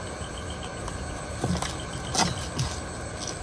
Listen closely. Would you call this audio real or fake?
real